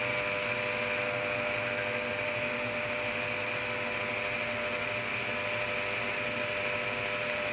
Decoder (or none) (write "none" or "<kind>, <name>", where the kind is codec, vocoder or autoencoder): none